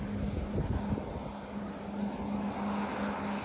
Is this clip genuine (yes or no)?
yes